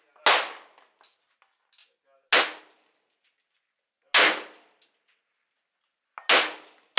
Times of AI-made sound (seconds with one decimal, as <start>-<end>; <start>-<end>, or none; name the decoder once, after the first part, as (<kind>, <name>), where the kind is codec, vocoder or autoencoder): none